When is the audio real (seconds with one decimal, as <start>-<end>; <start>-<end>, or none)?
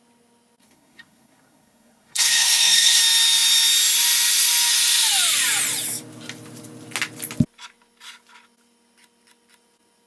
0.0-0.6; 3.0-10.1